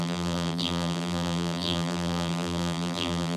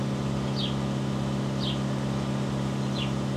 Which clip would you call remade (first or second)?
first